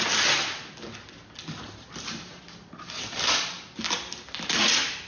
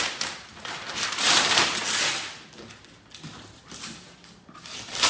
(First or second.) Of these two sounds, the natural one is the first